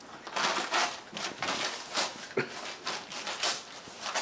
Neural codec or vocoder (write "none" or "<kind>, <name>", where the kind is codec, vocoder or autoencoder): none